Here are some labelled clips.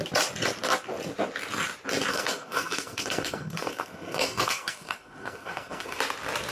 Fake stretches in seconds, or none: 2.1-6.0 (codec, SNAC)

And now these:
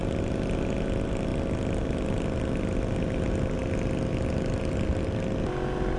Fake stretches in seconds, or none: none

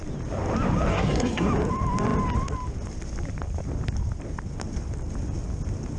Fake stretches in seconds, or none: 0.9-1.5 (codec, SNAC)

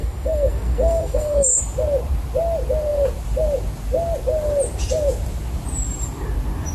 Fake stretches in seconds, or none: 0.0-1.6 (codec, SNAC)

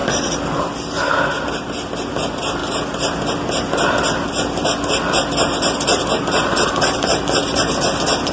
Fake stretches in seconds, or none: none

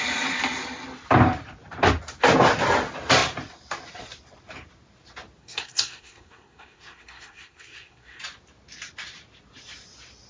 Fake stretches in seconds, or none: 5.4-8.2 (codec, SNAC)

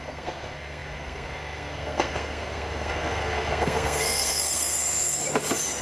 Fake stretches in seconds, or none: 0.0-5.2 (codec, SNAC)

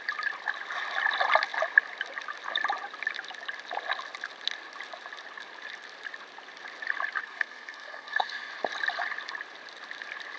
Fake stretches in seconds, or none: 7.2-8.5 (codec, SNAC)